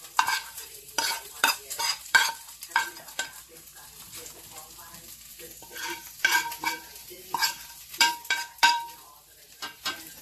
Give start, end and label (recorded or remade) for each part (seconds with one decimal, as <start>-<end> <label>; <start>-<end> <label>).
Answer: 0.0-4.2 remade; 4.2-6.6 recorded; 6.6-10.2 remade